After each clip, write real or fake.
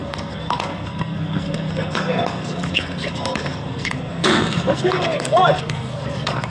fake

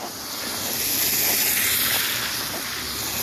real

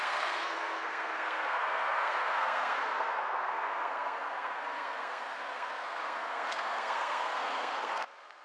fake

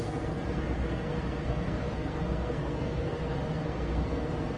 fake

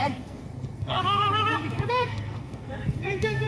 fake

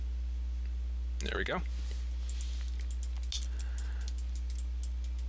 real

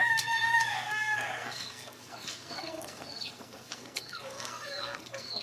fake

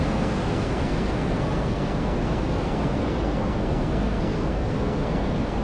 fake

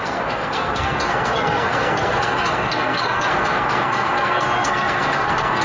fake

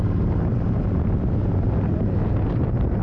real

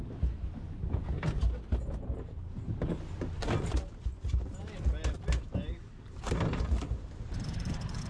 real